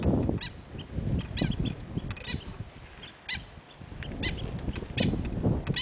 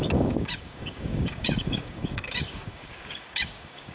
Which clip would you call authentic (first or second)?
first